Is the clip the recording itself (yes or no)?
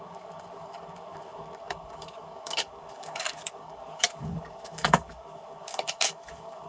no